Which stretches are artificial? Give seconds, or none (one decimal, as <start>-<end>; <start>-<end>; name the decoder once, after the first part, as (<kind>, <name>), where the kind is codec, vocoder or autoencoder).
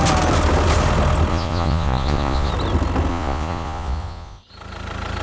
1.3-2.5 (vocoder, Vocos); 3.1-4.4